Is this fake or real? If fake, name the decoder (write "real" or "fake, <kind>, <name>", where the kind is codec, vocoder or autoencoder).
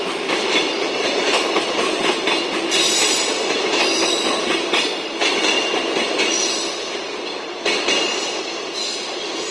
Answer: real